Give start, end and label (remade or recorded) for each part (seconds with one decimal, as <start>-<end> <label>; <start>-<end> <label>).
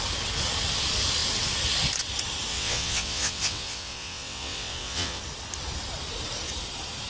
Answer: 0.0-2.5 recorded; 2.5-5.2 remade; 5.2-7.1 recorded